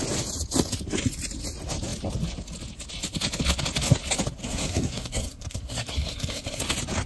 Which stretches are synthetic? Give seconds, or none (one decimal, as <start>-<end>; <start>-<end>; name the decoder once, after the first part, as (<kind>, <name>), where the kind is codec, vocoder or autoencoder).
4.4-6.6 (codec, SNAC)